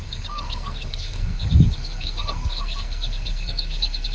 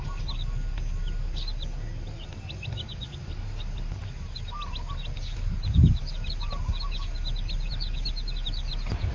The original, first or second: second